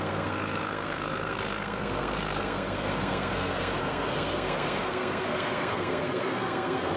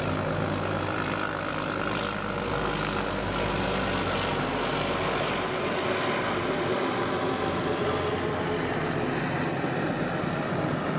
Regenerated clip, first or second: first